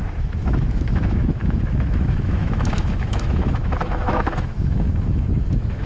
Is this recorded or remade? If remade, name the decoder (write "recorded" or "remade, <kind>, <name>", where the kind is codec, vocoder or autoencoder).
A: remade, autoencoder, DAC-VAE